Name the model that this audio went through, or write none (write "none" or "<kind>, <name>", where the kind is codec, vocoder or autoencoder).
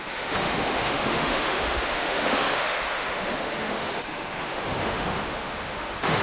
autoencoder, DAC-VAE